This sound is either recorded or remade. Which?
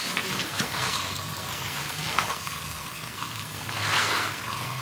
remade